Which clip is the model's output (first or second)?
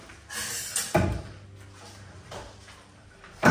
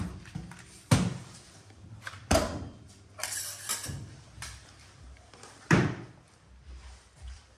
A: second